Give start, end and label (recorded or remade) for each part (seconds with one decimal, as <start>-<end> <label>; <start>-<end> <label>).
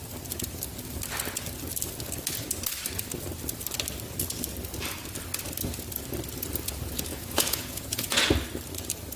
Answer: 0.0-7.1 recorded; 7.1-8.3 remade; 8.3-9.2 recorded